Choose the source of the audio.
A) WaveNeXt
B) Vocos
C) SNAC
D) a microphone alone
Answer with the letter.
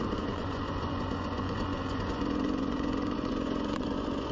B